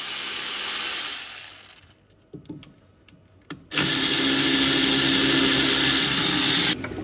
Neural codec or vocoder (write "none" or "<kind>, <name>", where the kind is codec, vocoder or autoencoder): none